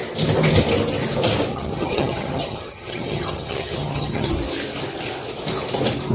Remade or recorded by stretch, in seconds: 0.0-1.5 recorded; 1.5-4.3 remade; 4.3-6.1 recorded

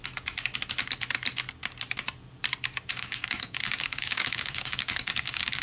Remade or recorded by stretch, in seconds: 0.0-2.9 recorded; 2.9-5.6 remade

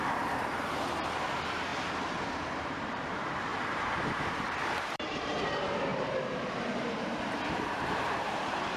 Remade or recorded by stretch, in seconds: 0.0-1.7 remade; 1.7-2.6 recorded; 2.6-8.8 remade

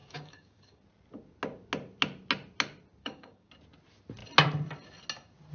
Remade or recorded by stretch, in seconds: 0.0-0.8 remade; 0.8-3.0 recorded; 3.0-3.5 remade; 3.5-5.5 recorded

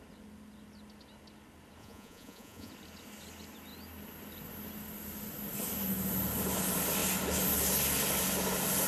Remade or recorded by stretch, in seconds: 0.0-1.8 recorded; 1.8-2.7 remade; 2.7-8.9 recorded